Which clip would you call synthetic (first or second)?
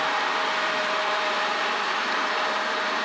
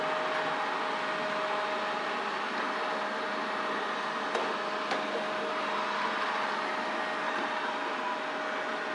first